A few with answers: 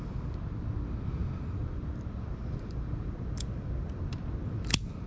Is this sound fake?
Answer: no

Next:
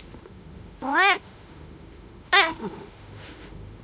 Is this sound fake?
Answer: yes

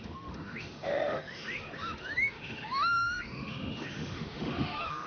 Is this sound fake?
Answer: yes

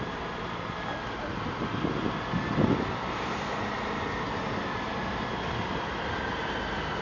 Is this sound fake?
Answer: no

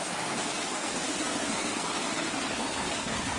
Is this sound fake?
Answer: yes